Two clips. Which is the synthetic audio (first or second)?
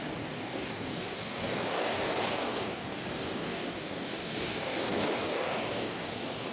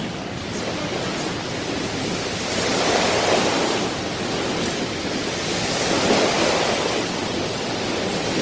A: first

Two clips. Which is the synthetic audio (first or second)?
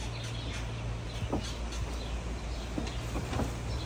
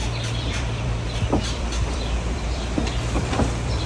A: second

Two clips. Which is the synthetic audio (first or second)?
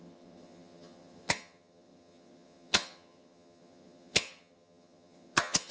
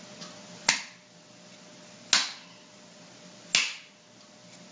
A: first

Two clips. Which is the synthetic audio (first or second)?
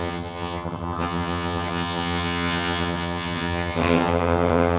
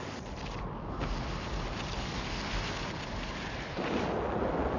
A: first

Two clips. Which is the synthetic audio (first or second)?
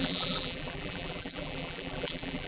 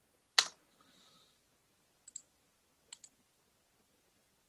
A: first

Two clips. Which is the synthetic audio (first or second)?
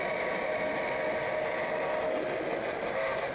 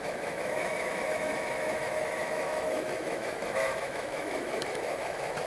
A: second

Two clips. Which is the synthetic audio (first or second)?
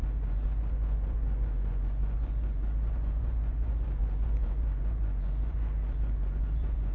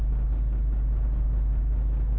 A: first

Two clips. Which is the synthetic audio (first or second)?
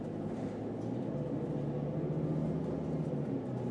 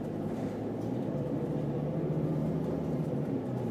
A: second